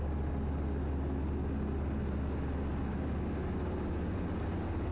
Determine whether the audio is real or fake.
real